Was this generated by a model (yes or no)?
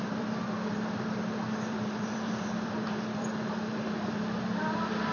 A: yes